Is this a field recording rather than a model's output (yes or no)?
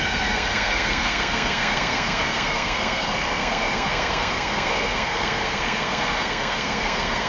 no